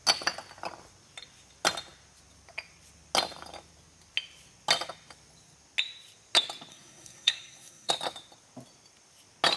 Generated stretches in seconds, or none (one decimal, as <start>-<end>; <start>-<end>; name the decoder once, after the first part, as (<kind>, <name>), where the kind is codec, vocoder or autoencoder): 6.7-7.9 (codec, SNAC)